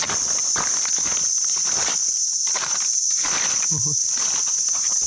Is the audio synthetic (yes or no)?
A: yes